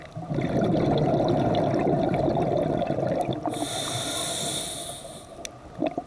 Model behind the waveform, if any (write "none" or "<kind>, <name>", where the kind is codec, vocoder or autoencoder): none